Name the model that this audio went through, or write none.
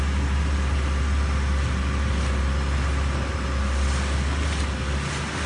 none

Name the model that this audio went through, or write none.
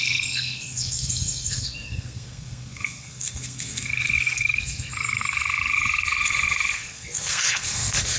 codec, SNAC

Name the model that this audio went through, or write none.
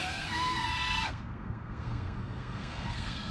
codec, SNAC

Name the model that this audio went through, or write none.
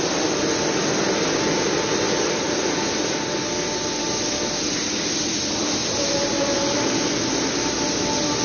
none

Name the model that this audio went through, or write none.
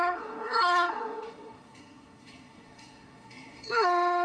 codec, SNAC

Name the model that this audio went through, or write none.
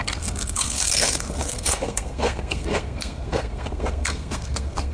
codec, SNAC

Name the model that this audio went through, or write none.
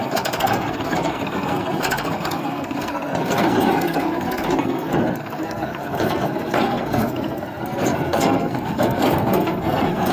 codec, SNAC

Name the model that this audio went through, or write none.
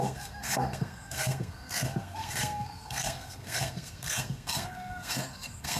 codec, SNAC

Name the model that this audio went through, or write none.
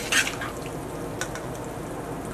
none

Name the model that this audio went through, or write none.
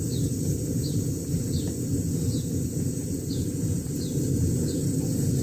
none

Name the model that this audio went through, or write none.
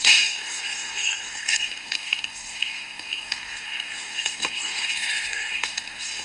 codec, SNAC